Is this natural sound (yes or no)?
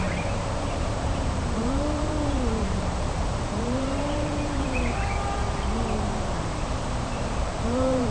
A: no